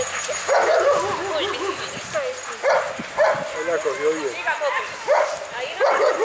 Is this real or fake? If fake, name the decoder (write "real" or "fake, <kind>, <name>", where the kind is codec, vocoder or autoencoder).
real